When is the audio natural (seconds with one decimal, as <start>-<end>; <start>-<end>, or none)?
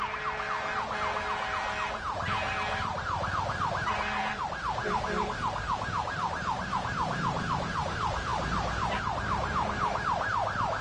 none